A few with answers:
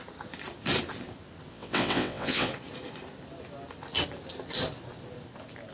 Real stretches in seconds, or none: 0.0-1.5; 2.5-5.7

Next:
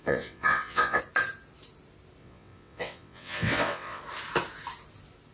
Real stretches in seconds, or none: 1.0-2.2; 4.0-5.3

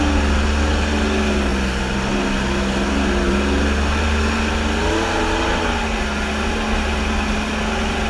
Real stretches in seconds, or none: 0.0-8.1

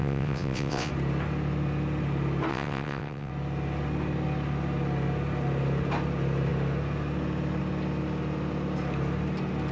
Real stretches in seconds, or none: 0.9-2.5; 3.3-9.7